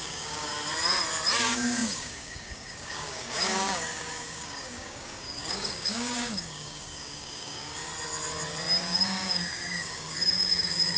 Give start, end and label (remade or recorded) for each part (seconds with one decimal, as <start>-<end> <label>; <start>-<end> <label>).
0.0-0.5 remade; 0.5-1.4 recorded; 1.4-7.9 remade; 7.9-8.8 recorded; 8.8-11.0 remade